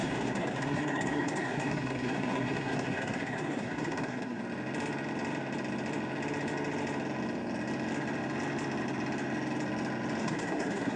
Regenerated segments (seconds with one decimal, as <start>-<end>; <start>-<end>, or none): 0.0-4.4; 10.2-11.0

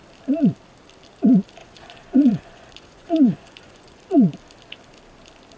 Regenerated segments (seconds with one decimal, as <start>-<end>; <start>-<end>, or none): 1.6-4.0

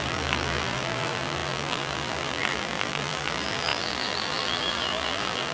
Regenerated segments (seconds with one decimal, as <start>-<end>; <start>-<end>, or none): 0.0-5.5

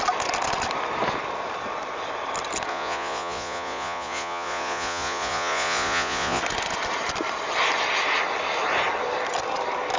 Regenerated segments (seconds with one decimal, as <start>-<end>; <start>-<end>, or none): 2.7-6.4